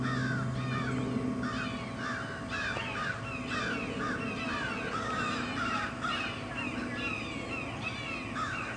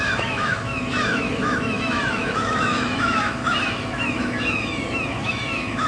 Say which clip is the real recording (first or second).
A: first